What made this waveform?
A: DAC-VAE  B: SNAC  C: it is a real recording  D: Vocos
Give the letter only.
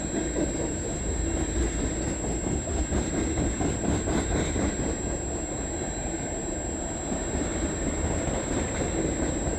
C